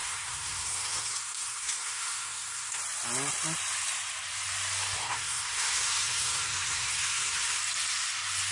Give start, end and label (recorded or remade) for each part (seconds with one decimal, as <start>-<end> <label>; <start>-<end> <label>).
0.0-2.8 remade; 2.8-5.0 recorded; 5.0-7.6 remade; 7.6-8.5 recorded